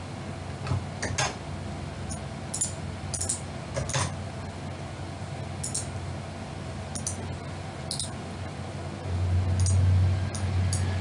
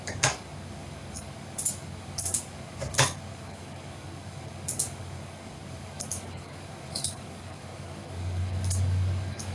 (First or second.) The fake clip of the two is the second